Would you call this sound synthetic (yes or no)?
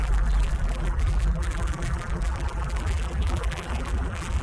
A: yes